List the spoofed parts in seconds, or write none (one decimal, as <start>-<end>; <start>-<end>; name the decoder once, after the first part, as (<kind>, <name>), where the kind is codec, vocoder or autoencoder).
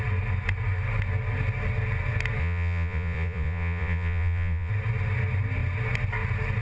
2.4-4.7 (vocoder, Vocos)